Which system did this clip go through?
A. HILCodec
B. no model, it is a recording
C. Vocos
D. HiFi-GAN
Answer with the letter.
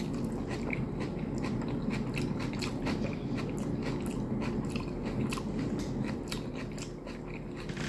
B